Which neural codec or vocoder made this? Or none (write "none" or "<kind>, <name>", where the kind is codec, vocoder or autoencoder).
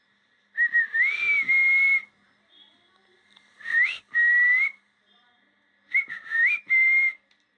none